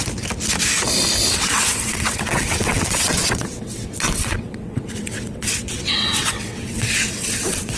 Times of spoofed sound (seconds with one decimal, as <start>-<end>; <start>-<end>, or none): 1.3-7.8